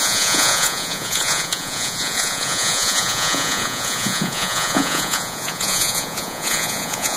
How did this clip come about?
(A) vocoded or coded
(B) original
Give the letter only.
A